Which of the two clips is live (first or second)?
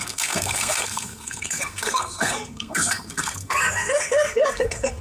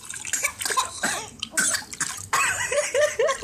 second